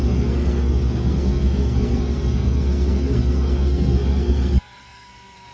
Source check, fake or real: fake